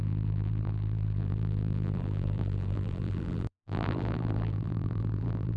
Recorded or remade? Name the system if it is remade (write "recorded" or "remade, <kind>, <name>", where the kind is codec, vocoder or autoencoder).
remade, vocoder, BigVGAN v2